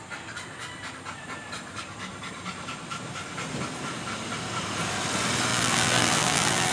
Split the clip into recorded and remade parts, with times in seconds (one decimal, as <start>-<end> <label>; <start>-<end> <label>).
0.0-5.5 recorded; 5.5-6.7 remade